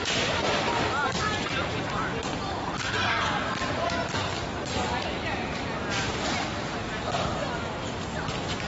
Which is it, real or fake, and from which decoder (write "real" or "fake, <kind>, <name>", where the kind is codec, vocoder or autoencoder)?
real